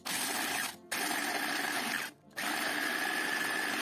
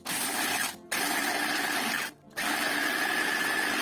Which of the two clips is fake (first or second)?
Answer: first